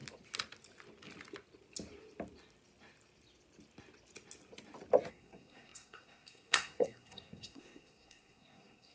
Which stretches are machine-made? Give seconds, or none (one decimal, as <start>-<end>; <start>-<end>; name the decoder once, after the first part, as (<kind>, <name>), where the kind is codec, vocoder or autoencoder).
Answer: 5.1-8.9 (codec, SNAC)